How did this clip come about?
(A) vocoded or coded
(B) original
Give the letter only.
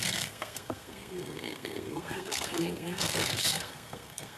A